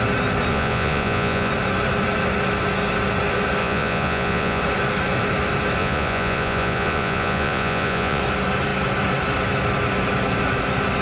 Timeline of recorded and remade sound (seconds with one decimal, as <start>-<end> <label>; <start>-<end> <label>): 0.0-0.5 recorded; 0.5-1.5 remade; 1.5-3.6 recorded; 3.6-4.6 remade; 4.6-5.8 recorded; 5.8-8.2 remade; 8.2-11.0 recorded